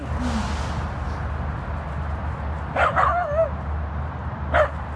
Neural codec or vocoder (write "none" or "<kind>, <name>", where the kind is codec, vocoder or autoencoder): none